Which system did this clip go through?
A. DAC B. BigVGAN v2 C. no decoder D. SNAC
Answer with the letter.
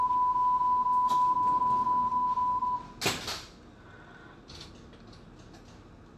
C